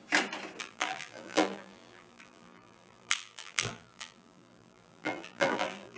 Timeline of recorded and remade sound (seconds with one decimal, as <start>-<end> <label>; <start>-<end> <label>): 0.0-0.6 recorded; 0.6-6.0 remade